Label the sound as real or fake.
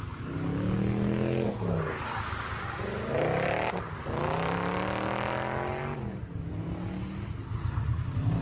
real